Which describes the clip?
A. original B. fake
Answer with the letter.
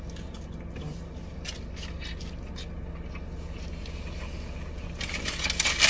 A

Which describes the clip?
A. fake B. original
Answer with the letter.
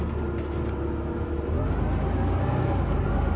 B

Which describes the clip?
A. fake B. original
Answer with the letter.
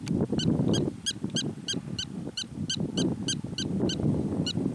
B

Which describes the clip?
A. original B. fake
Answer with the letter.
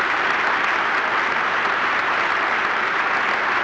A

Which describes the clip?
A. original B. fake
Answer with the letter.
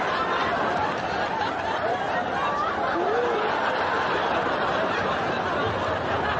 A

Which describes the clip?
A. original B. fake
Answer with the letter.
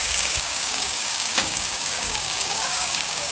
B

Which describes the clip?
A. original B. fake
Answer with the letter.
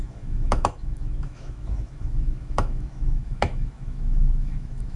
B